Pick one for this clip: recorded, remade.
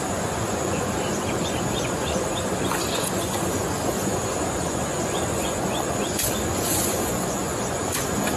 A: remade